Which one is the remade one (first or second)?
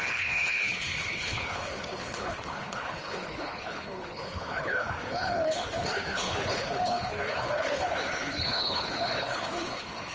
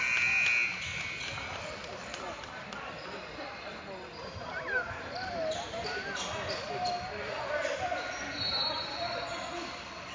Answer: first